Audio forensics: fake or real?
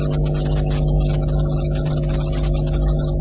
real